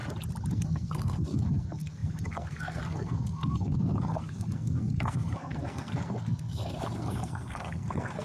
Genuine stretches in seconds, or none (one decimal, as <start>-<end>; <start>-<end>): 0.0-0.5